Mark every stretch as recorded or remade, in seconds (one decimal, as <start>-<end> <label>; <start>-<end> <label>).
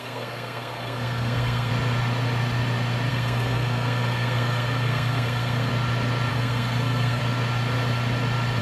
0.0-1.7 remade; 1.7-3.1 recorded; 3.1-5.7 remade; 5.7-6.3 recorded; 6.3-7.2 remade; 7.2-8.6 recorded